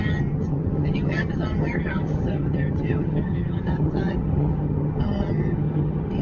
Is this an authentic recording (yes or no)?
no